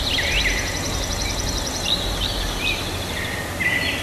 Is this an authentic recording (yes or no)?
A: yes